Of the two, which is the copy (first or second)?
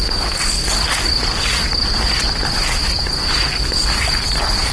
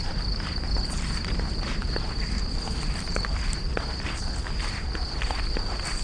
second